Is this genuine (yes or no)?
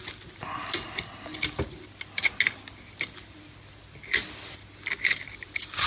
yes